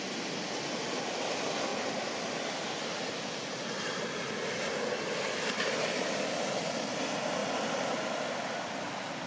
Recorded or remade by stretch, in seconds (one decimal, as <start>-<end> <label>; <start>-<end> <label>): 0.0-9.3 recorded